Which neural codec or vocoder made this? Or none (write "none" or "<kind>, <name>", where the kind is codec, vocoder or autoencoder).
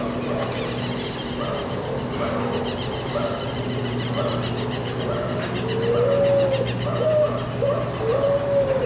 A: none